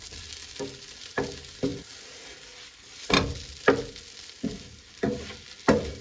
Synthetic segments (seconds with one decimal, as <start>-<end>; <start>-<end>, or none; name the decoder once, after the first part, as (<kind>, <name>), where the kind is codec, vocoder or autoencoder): none